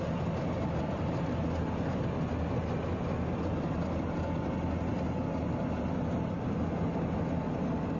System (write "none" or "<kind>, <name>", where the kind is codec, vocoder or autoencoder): none